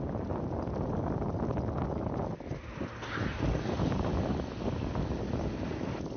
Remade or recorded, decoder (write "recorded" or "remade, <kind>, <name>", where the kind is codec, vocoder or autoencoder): recorded